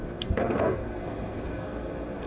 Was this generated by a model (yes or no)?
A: yes